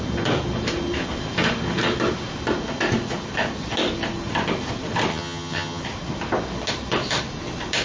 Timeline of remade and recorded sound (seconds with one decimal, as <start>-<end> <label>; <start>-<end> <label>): 0.0-5.1 recorded; 5.1-5.8 remade; 5.8-7.8 recorded